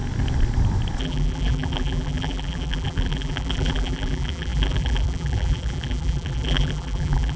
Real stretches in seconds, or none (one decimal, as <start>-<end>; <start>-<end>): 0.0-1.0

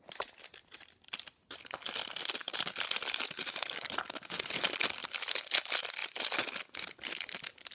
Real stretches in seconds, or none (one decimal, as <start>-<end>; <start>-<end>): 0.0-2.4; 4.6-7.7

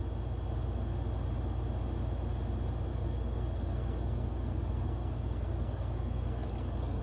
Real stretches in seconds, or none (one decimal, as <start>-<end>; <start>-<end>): 0.0-2.9

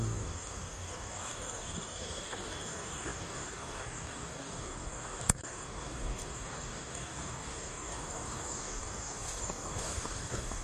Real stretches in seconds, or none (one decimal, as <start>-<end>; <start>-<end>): none

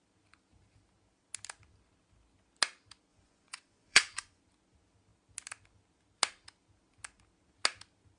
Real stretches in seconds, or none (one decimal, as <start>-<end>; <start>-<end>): 0.0-3.1; 4.4-8.2

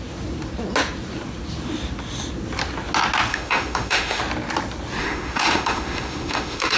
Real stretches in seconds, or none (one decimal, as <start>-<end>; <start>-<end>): 0.0-3.3; 4.2-5.0